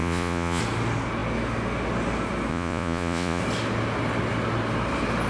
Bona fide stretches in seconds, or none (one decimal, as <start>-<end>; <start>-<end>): 0.6-2.5; 3.4-5.3